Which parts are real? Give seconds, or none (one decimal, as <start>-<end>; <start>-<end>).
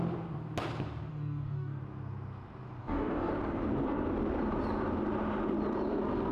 0.0-1.1; 1.8-2.8; 3.3-6.3